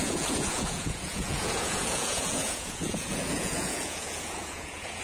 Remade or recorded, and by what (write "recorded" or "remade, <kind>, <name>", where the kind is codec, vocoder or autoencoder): remade, vocoder, Vocos